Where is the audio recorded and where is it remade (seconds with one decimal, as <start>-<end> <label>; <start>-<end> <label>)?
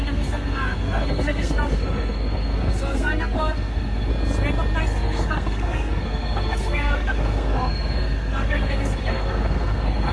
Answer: 0.0-4.1 remade; 4.1-4.8 recorded; 4.8-10.1 remade